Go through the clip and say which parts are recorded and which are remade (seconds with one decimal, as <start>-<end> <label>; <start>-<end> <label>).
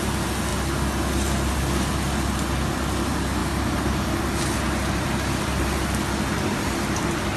0.0-7.4 recorded